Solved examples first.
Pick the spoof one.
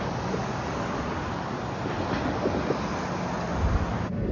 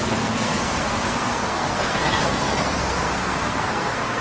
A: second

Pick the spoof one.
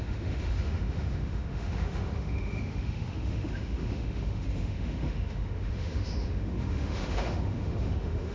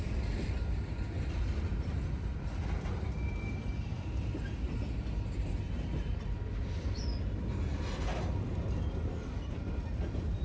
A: first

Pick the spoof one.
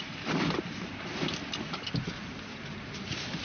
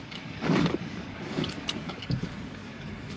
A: second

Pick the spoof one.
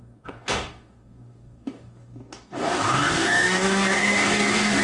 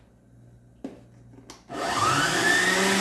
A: first